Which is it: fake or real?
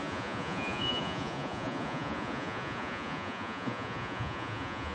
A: fake